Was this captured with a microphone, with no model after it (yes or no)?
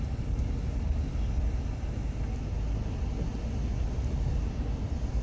yes